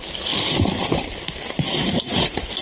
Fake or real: real